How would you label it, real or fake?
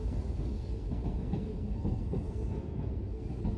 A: fake